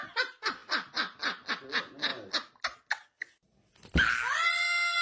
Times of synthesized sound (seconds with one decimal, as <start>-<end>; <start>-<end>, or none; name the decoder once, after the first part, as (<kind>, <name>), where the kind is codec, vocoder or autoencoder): none